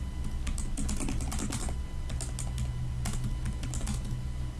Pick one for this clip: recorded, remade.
recorded